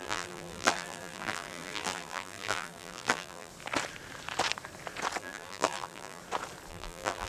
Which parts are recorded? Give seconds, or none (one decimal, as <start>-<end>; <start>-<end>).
3.5-5.2; 6.2-6.7